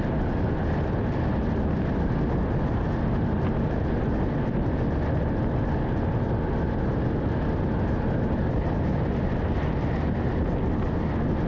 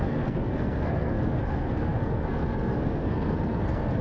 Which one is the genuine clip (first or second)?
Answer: first